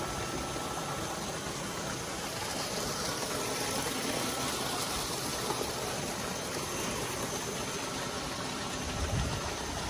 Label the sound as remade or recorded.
recorded